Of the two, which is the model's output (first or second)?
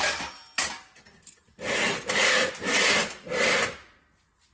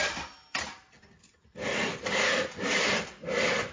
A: second